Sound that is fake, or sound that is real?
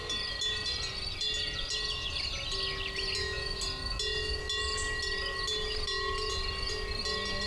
real